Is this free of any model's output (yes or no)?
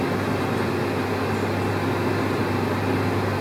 yes